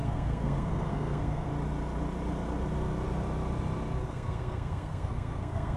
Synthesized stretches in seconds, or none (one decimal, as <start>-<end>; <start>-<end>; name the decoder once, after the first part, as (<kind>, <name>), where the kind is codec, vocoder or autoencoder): 0.0-1.5 (codec, SNAC); 4.1-5.8